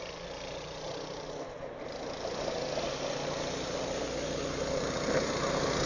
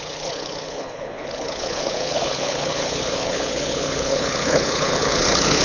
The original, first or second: first